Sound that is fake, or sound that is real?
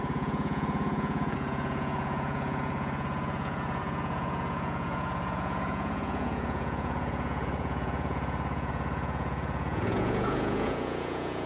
fake